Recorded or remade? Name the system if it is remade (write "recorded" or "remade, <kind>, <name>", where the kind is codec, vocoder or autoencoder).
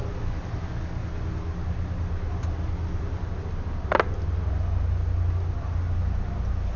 recorded